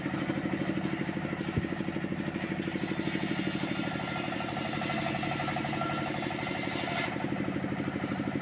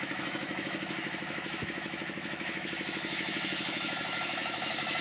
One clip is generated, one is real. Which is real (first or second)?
first